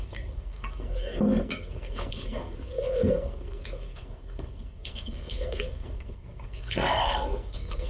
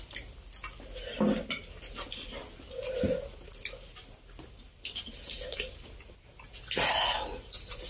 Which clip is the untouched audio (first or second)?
second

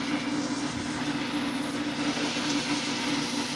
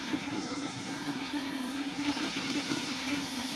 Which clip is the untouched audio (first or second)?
first